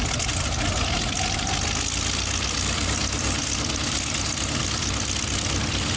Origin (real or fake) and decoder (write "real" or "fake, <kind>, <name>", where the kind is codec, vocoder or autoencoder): real